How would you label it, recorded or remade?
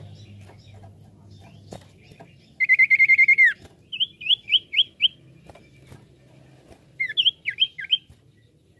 recorded